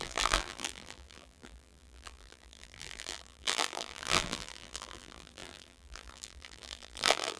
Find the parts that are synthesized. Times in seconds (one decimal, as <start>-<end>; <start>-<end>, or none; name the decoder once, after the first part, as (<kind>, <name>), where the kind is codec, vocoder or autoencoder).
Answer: 0.0-7.4 (vocoder, BigVGAN v2)